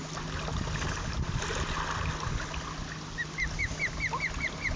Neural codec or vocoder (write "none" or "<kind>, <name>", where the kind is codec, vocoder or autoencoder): none